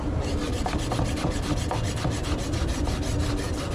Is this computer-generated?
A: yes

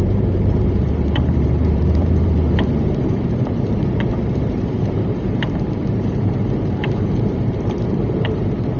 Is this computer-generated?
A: yes